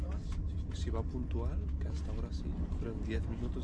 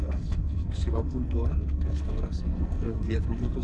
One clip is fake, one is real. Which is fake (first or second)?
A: second